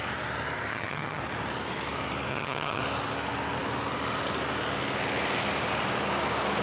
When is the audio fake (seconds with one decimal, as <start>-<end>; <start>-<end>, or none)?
0.7-1.2; 2.3-2.8